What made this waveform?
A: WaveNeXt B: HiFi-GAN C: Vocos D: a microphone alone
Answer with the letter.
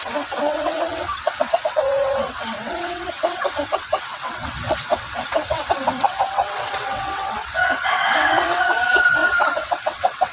A